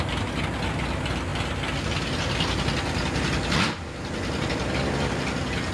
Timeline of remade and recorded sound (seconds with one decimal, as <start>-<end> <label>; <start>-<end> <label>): 0.0-5.7 recorded